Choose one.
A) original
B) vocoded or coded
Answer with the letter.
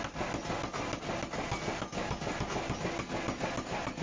A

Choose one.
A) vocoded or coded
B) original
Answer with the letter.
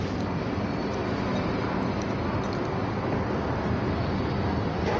B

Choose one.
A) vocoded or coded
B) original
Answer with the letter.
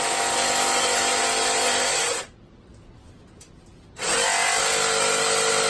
B